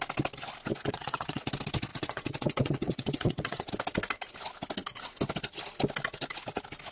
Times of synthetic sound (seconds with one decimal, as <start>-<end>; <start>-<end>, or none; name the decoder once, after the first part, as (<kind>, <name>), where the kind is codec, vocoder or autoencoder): 0.7-1.5 (vocoder, WaveNeXt); 1.9-3.7